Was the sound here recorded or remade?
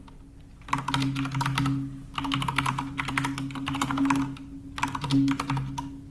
recorded